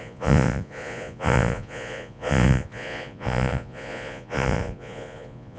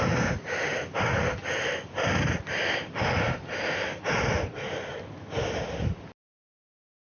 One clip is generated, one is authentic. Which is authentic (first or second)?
second